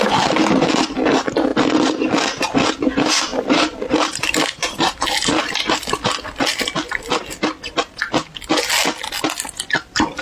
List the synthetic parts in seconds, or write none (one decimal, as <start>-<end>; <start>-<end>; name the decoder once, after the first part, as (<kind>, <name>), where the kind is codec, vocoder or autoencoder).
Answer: 3.3-5.5 (vocoder, BigVGAN v2)